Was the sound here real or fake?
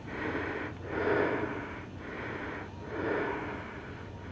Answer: real